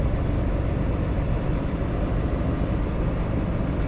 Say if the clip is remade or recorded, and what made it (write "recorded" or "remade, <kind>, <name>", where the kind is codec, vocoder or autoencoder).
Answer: recorded